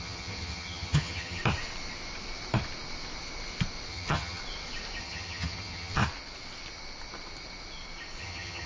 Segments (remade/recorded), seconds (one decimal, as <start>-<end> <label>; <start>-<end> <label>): 0.0-1.4 remade; 1.4-3.9 recorded; 3.9-4.4 remade; 4.4-5.0 recorded; 5.0-6.0 remade; 6.0-8.2 recorded; 8.2-8.7 remade

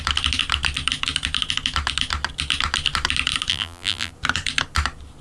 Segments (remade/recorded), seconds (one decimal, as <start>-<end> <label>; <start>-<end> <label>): 0.0-3.5 recorded; 3.5-4.1 remade; 4.1-5.2 recorded

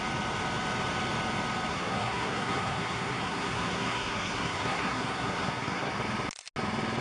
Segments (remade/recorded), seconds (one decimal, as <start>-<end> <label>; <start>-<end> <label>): 0.0-1.7 recorded; 1.7-5.9 remade; 5.9-7.0 recorded

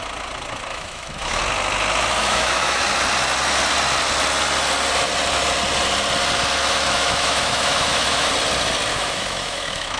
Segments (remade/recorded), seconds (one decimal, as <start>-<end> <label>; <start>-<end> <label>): 0.0-0.7 recorded; 0.7-1.4 remade; 1.4-2.2 recorded; 2.2-2.8 remade; 2.8-6.6 recorded; 6.6-8.3 remade; 8.3-8.9 recorded; 8.9-10.0 remade

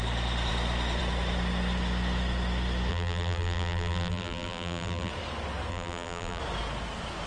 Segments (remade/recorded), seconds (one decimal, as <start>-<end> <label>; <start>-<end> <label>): 0.0-2.9 recorded; 2.9-5.1 remade; 5.1-5.7 recorded; 5.7-6.4 remade; 6.4-7.3 recorded

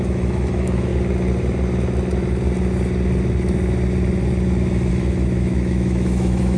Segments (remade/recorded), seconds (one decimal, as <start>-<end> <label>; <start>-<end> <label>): 0.0-0.9 remade; 0.9-4.9 recorded; 4.9-6.6 remade

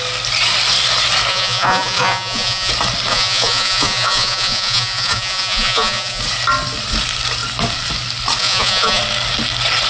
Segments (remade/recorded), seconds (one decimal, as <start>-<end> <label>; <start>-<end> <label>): 0.0-1.3 recorded; 1.3-2.7 remade; 2.7-3.1 recorded; 3.1-6.2 remade; 6.2-8.4 recorded; 8.4-9.0 remade; 9.0-9.9 recorded

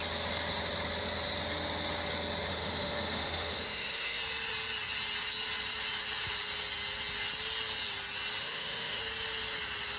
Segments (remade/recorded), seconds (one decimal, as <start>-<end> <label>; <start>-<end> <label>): 0.0-2.5 recorded; 2.5-4.2 remade; 4.2-8.4 recorded; 8.4-9.0 remade; 9.0-10.0 recorded